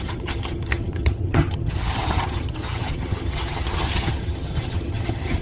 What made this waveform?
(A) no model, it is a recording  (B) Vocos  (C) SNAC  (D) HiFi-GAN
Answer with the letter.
D